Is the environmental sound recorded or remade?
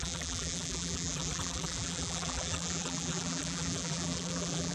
remade